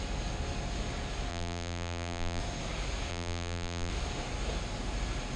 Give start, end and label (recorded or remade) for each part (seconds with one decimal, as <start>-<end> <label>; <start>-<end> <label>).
0.0-1.3 recorded; 1.3-2.4 remade; 2.4-3.1 recorded; 3.1-3.9 remade; 3.9-5.4 recorded